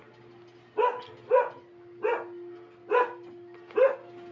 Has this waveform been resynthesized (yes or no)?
no